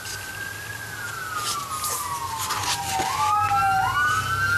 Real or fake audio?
real